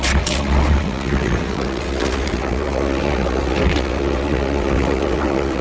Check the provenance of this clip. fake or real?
fake